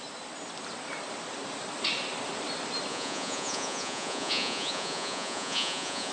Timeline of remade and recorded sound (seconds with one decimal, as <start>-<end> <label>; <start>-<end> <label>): 0.0-2.9 recorded; 2.9-6.1 remade